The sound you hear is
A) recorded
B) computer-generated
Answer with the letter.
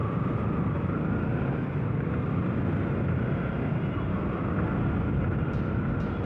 A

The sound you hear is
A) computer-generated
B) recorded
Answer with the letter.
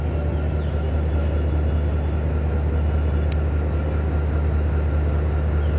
B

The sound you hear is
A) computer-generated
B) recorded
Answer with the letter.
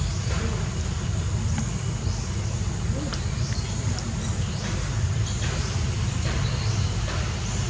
A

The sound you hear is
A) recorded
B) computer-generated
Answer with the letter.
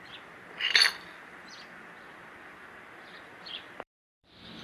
B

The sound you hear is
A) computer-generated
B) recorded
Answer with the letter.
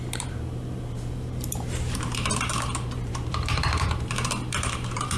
A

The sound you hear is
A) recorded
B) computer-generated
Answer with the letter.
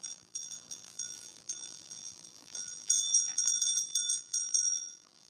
B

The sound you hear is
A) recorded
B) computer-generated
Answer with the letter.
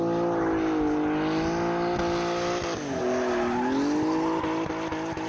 A